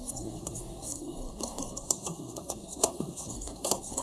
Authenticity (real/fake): fake